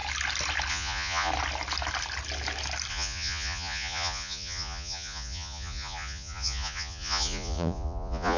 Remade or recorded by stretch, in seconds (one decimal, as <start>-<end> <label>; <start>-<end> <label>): 0.0-0.7 recorded; 0.7-1.3 remade; 1.3-2.9 recorded; 2.9-8.4 remade